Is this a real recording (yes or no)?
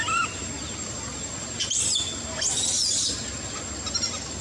yes